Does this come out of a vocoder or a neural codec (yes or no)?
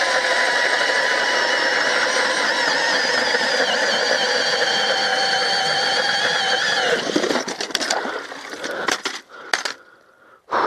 no